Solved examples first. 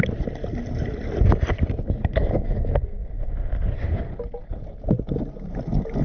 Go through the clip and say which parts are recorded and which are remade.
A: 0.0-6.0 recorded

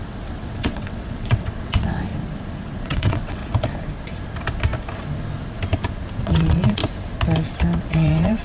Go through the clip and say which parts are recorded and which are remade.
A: 0.0-2.1 remade; 2.1-2.8 recorded; 2.8-3.4 remade; 3.4-6.2 recorded; 6.2-6.8 remade; 6.8-7.8 recorded; 7.8-8.4 remade

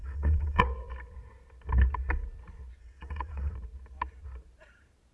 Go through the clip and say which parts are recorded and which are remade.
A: 0.0-0.6 remade; 0.6-2.8 recorded; 2.8-3.5 remade; 3.5-5.1 recorded

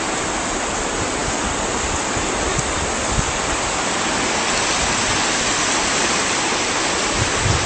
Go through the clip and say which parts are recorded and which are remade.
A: 0.0-7.7 recorded